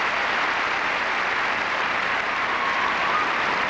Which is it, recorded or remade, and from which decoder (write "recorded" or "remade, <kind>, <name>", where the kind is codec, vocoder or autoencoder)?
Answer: recorded